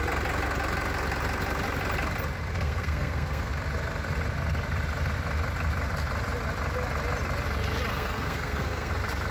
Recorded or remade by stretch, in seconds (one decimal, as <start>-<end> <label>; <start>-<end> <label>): 0.0-2.5 recorded; 2.5-3.5 remade; 3.5-7.9 recorded; 7.9-8.9 remade; 8.9-9.3 recorded